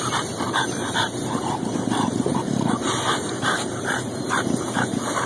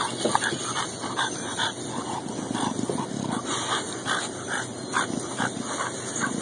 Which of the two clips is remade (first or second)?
first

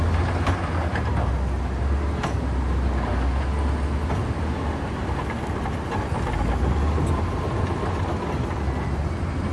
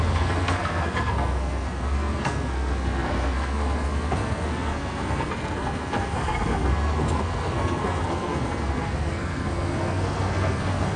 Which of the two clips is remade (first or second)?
second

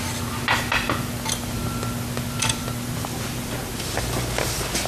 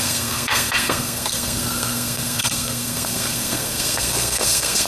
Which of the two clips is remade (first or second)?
second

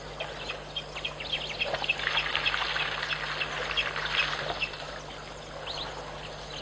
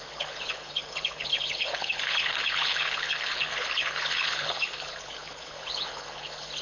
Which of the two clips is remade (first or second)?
second